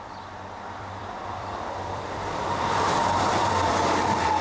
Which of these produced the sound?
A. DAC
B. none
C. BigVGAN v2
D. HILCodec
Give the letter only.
C